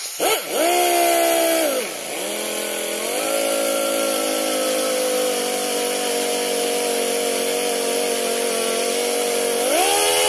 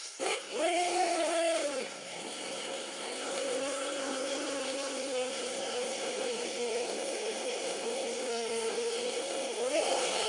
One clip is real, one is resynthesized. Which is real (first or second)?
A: first